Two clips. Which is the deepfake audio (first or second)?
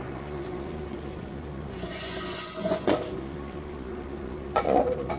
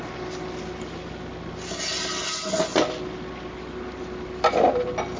first